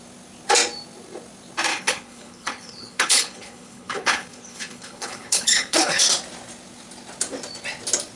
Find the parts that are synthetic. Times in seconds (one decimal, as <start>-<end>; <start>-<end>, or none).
1.7-6.0